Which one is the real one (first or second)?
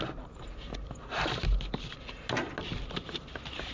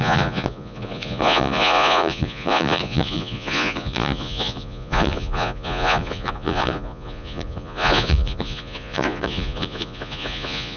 first